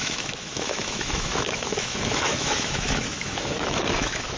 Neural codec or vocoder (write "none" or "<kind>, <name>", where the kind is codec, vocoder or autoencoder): autoencoder, DAC-VAE